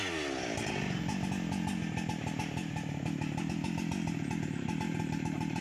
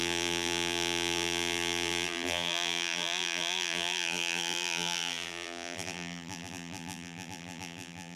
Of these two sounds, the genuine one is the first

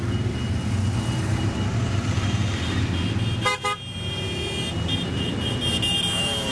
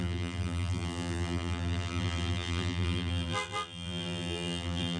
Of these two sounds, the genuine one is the first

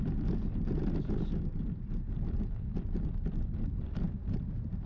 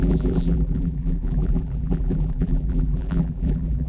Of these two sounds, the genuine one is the first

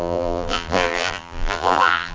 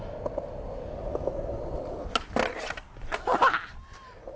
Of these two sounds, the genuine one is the second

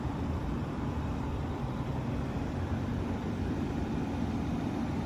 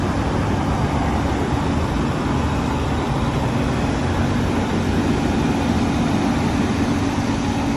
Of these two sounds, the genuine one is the second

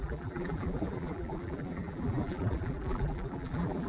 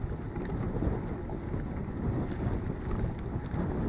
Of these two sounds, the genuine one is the second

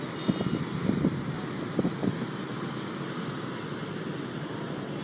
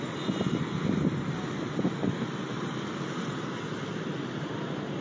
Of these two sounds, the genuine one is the first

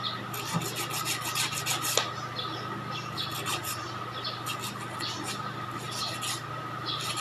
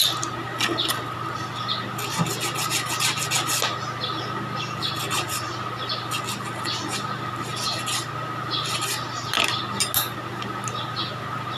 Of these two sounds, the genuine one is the second